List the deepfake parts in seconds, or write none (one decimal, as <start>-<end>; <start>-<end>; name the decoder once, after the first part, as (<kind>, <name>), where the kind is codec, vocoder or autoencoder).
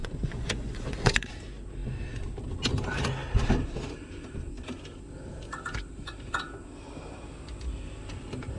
0.0-1.3 (vocoder, Vocos)